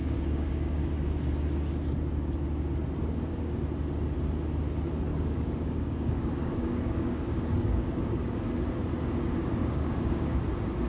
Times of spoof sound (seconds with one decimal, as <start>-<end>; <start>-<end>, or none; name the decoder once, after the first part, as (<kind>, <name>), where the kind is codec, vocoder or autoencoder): 0.0-0.9 (codec, DAC); 5.1-8.4; 9.6-10.4